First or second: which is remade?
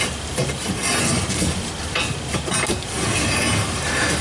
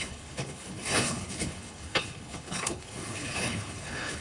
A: second